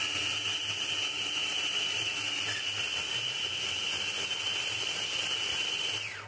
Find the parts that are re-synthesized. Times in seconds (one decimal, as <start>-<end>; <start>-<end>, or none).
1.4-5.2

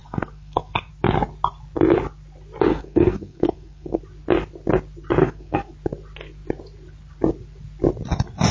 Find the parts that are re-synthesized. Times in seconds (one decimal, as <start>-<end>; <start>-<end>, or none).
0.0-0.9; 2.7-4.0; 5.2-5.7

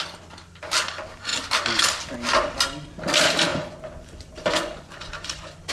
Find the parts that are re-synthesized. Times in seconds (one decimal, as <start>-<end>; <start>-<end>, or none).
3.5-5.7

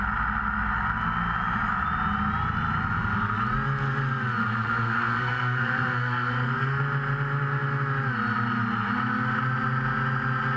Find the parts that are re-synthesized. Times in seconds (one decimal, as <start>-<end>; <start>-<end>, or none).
4.4-6.8